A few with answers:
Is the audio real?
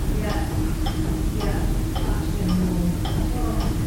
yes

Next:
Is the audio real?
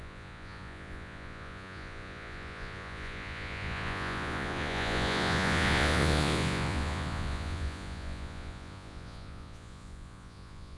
no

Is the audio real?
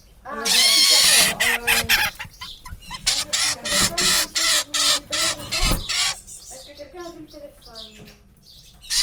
yes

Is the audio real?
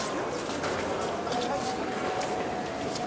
yes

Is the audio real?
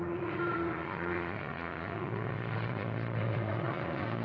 no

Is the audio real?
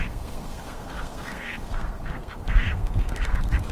no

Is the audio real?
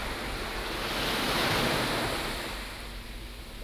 yes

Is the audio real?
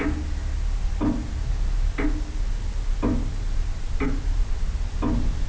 yes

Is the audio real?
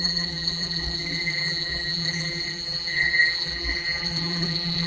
no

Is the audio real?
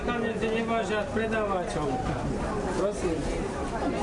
yes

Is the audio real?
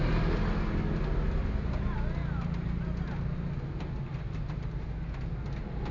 yes